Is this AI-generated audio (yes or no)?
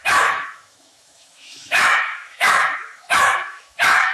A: yes